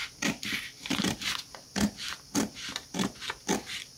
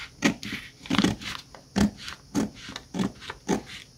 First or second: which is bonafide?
second